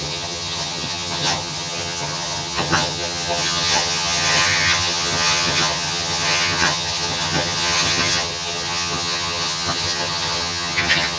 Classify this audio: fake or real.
fake